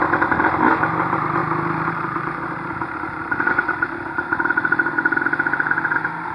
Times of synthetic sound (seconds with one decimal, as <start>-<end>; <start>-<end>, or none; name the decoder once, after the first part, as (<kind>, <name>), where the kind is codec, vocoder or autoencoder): 1.4-5.2 (vocoder, BigVGAN v2)